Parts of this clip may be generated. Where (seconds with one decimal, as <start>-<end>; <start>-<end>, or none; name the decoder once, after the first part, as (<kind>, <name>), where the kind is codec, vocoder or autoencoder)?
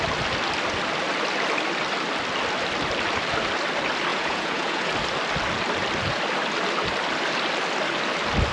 4.1-4.9 (vocoder, Vocos)